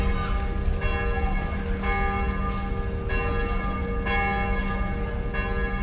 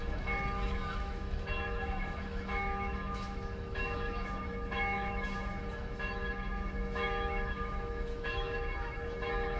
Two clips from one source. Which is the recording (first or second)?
first